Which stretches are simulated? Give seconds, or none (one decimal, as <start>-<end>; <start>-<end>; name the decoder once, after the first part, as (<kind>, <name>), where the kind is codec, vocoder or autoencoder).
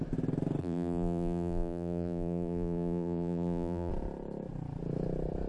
0.6-3.9 (vocoder, BigVGAN v2)